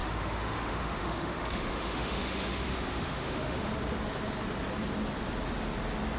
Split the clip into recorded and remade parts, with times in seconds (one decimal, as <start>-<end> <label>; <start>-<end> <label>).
0.0-3.7 remade; 3.7-6.2 recorded